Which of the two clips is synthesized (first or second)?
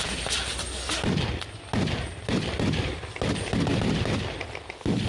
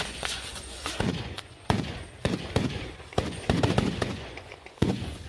second